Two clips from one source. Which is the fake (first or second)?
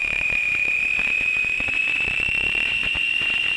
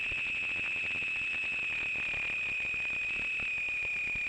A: first